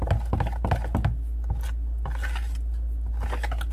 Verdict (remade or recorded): recorded